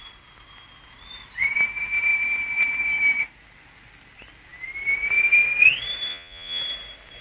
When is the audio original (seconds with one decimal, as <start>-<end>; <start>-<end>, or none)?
0.0-6.1; 6.6-7.2